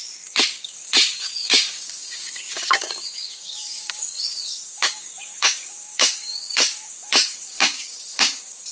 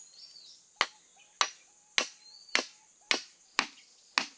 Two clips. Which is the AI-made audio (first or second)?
first